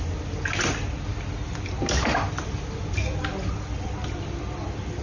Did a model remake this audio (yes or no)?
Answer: no